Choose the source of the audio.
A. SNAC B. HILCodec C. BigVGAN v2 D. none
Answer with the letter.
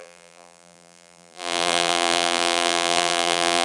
C